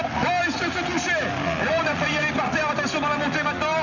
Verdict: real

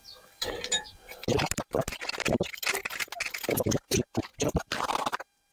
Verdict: real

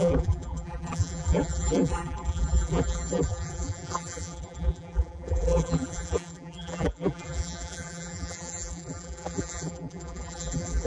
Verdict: fake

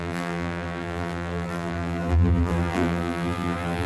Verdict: fake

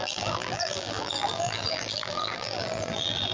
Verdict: fake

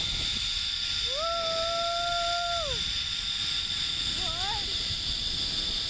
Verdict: real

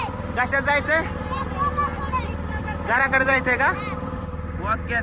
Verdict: fake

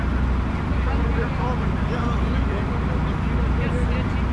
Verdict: real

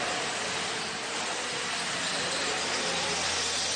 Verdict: real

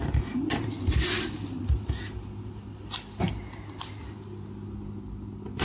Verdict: real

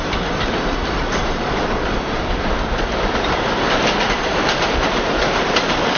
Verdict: fake